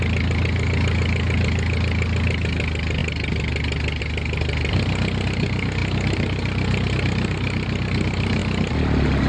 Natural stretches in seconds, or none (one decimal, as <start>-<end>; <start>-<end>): 0.0-9.3